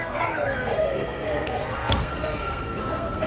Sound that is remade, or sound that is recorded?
remade